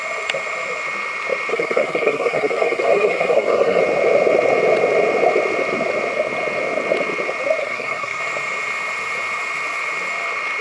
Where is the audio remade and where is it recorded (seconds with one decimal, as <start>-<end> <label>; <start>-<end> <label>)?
0.0-1.5 recorded; 1.5-3.8 remade; 3.8-7.6 recorded; 7.6-8.2 remade; 8.2-10.6 recorded